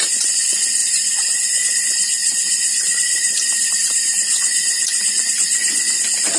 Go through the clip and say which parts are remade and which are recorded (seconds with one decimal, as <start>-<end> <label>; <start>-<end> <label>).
0.0-0.8 recorded; 0.8-1.6 remade; 1.6-2.2 recorded; 2.2-5.3 remade; 5.3-6.4 recorded